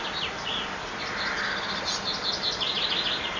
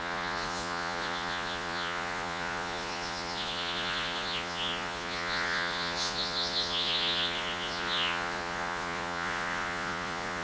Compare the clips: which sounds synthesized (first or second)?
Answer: second